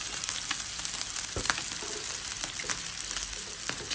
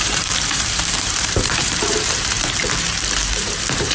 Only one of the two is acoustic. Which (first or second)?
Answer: first